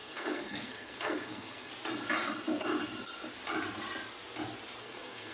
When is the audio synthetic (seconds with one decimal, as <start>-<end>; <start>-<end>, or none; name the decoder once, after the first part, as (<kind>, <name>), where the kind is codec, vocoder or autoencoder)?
0.0-1.7 (codec, SNAC); 4.8-5.3